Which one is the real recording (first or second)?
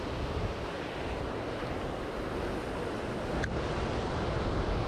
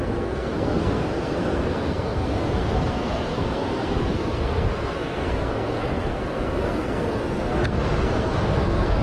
first